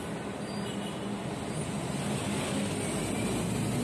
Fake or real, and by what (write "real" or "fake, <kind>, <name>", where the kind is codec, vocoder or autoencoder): real